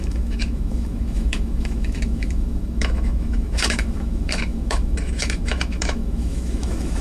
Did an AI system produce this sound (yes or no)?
yes